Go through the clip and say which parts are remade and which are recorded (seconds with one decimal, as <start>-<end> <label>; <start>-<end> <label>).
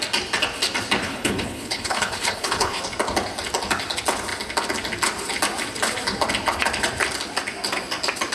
0.0-1.0 recorded; 1.0-2.8 remade; 2.8-8.3 recorded